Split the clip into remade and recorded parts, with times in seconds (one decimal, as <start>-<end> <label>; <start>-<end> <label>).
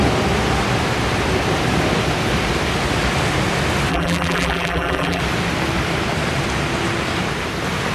0.0-3.9 recorded; 3.9-5.2 remade; 5.2-7.9 recorded